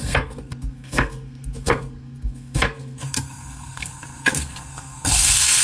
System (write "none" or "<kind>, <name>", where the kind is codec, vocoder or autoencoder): codec, SNAC